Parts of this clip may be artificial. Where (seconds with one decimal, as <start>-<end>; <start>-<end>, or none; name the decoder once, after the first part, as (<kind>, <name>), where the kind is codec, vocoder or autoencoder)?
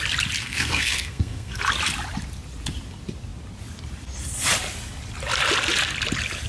0.4-1.6 (codec, SNAC)